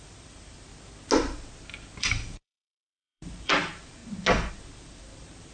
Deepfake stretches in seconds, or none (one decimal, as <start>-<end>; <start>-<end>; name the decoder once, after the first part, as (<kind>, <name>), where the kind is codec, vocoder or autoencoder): 0.0-0.7 (vocoder, BigVGAN v2); 2.0-4.0; 4.5-5.5